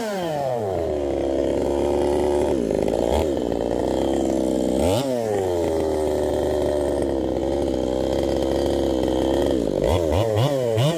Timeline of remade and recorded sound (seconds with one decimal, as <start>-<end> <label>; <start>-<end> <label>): 0.0-3.8 remade; 3.8-6.3 recorded; 6.3-7.4 remade; 7.4-9.4 recorded; 9.4-11.0 remade